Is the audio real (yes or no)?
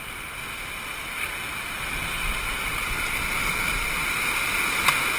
yes